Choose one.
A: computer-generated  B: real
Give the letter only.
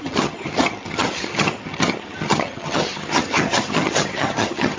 A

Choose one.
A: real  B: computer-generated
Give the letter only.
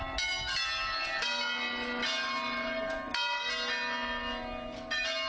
A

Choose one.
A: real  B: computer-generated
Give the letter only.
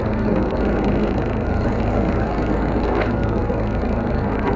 B